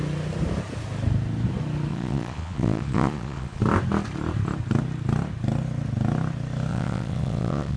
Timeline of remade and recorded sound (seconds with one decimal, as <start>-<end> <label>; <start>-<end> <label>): 0.0-1.9 recorded; 1.9-3.6 remade; 3.6-6.7 recorded; 6.7-7.8 remade